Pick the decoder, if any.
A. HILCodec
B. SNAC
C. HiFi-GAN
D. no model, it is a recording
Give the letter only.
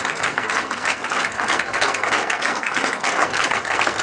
B